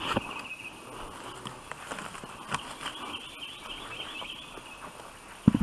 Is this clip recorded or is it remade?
recorded